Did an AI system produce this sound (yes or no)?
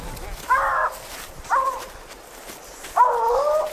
no